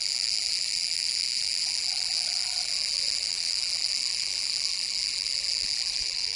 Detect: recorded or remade remade